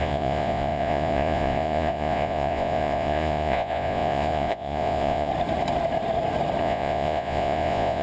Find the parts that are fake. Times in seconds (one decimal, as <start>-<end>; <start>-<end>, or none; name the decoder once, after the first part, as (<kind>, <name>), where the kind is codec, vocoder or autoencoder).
0.0-5.3 (vocoder, Vocos); 6.6-8.0